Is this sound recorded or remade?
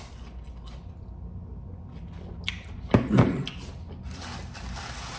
recorded